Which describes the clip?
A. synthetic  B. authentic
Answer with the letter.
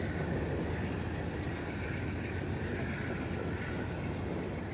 B